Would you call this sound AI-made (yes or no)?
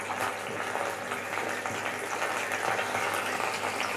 no